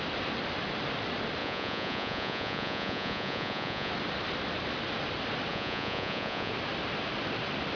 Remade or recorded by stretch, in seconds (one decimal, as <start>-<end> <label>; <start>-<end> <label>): 0.0-1.4 recorded; 1.4-3.9 remade; 3.9-5.5 recorded; 5.5-6.5 remade; 6.5-7.8 recorded